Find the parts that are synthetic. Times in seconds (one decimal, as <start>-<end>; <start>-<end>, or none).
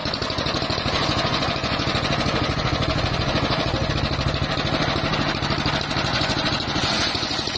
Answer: 0.0-3.9; 6.1-7.6